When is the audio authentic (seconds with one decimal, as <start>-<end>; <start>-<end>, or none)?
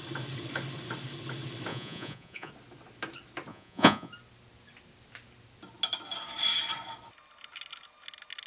0.0-1.7; 2.5-3.5; 4.1-8.5